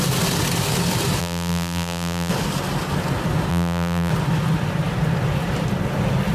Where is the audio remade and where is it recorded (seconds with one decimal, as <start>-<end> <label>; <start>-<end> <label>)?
0.0-1.2 recorded; 1.2-2.3 remade; 2.3-3.5 recorded; 3.5-4.1 remade; 4.1-6.3 recorded